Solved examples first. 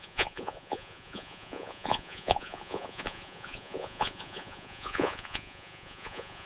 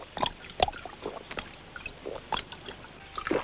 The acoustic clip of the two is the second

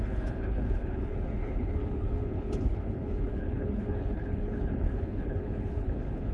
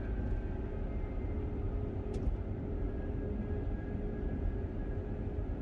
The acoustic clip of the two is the second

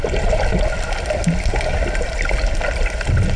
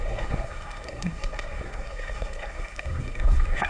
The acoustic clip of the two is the first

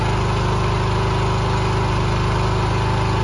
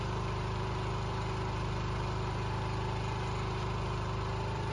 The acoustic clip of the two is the first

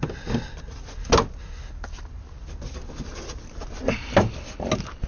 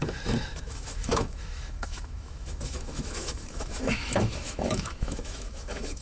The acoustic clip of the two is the first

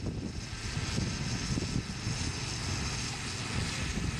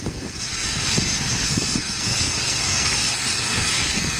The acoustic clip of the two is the first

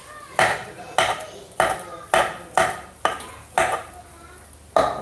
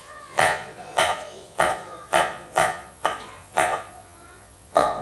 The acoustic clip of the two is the first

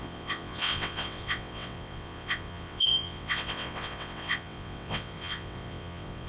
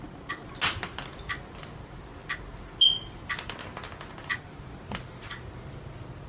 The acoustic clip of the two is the second